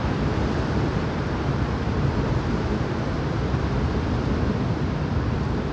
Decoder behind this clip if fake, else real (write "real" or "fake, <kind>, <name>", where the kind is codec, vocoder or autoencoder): real